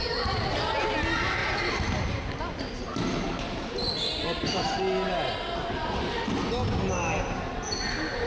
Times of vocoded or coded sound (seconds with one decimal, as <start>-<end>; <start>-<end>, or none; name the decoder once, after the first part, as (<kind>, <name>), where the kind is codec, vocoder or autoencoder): none